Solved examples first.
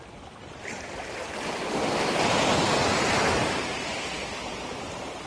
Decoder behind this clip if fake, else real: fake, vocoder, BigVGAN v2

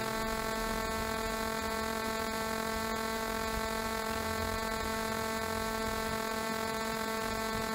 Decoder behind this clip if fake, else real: fake, vocoder, BigVGAN v2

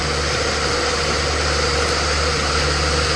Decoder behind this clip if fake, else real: real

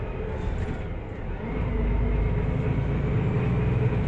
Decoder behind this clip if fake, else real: real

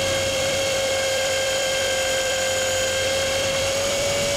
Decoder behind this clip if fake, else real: fake, vocoder, BigVGAN v2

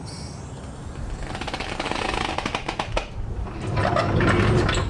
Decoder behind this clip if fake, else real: real